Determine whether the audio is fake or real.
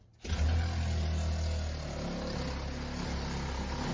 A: real